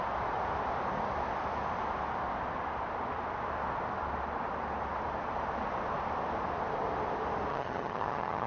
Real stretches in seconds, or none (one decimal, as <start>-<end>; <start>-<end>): 0.0-7.5